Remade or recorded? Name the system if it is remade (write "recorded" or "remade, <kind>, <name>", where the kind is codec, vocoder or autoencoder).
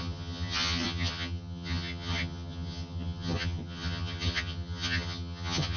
remade, vocoder, HiFi-GAN